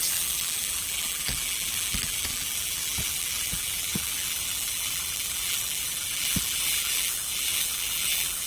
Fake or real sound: fake